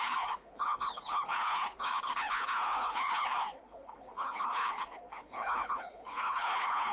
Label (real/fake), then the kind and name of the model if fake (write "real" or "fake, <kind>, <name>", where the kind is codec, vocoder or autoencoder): fake, codec, HILCodec